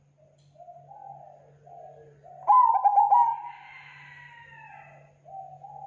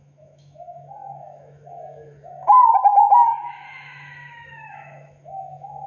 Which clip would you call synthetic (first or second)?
second